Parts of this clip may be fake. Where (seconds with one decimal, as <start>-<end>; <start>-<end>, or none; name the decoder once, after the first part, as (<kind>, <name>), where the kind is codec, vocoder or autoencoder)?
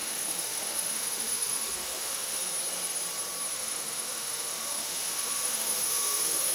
0.0-2.5 (autoencoder, DAC-VAE); 3.5-6.5